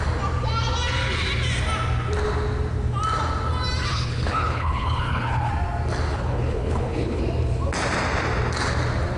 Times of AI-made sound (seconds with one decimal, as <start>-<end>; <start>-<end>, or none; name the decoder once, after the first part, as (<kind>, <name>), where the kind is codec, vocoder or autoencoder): 3.9-5.5 (codec, HILCodec); 6.1-7.2

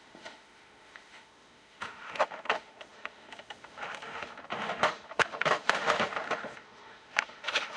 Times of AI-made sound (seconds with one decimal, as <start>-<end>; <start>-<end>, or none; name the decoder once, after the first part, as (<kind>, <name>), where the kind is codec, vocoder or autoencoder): 0.0-7.8 (autoencoder, DAC-VAE)

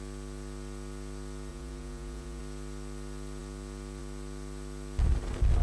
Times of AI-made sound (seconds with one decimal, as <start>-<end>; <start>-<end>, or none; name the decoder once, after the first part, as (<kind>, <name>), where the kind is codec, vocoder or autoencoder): 1.5-2.4 (vocoder, Vocos)

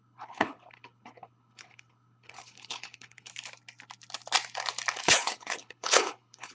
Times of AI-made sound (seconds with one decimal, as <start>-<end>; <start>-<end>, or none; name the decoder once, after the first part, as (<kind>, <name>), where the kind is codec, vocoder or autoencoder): 0.0-3.3 (codec, HILCodec); 5.0-6.5

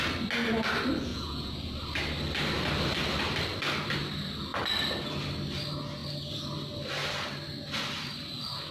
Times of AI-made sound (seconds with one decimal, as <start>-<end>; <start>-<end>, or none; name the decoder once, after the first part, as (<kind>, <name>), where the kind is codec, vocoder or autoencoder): 1.1-1.7 (vocoder, Vocos)

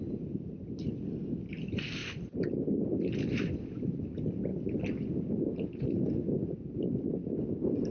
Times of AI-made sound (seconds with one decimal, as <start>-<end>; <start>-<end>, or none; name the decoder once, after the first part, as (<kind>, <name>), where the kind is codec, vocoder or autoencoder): none